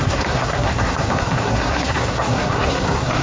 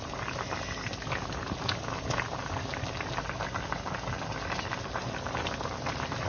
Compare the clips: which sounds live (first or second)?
second